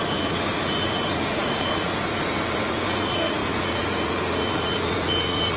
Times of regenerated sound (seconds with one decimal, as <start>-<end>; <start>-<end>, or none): 0.0-5.6